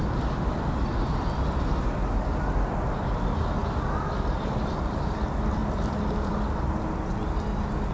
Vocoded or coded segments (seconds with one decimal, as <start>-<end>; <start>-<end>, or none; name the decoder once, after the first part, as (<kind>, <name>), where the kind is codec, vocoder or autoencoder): 0.0-1.7 (vocoder, BigVGAN v2); 5.6-6.7